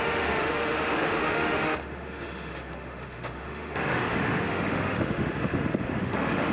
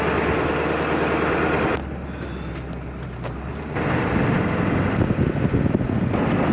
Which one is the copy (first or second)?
first